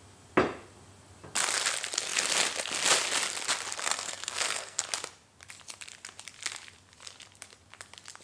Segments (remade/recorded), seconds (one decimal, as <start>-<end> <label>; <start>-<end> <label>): 0.0-3.8 recorded; 3.8-4.8 remade; 4.8-8.2 recorded